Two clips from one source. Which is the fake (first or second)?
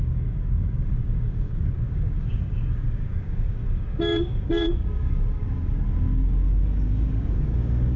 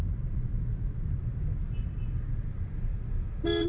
first